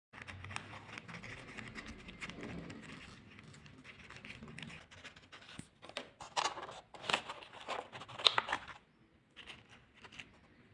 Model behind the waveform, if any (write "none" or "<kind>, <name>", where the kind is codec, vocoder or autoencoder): none